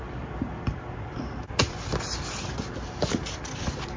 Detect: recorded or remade remade